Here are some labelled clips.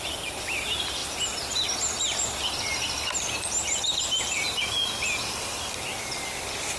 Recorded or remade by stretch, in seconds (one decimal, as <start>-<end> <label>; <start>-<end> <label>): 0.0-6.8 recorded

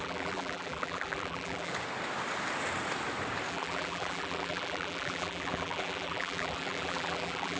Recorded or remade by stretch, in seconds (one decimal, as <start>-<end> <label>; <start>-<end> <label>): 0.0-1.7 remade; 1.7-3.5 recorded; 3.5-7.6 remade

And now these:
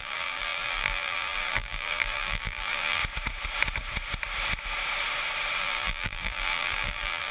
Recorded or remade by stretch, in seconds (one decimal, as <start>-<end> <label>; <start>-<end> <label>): 0.0-3.0 remade; 3.0-5.6 recorded; 5.6-7.3 remade

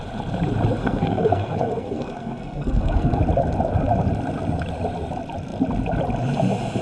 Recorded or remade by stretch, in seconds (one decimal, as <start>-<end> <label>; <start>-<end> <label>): 0.0-0.8 recorded; 0.8-3.2 remade; 3.2-6.8 recorded

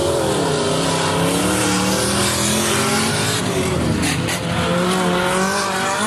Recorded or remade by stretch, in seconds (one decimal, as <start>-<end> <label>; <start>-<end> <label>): 0.0-6.1 recorded